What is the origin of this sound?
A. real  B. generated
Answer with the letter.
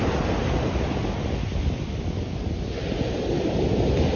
A